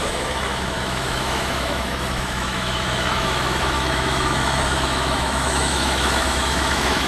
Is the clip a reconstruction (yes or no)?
yes